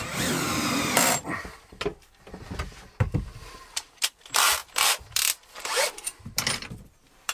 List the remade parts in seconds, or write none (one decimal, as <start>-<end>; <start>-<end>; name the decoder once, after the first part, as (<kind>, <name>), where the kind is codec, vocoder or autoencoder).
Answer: 0.0-4.6 (vocoder, BigVGAN v2); 5.1-7.3